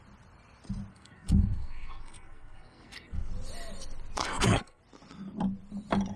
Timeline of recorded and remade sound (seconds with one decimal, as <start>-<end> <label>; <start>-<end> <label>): 0.0-0.9 recorded; 0.9-3.3 remade; 3.3-4.2 recorded; 4.2-4.8 remade; 4.8-6.2 recorded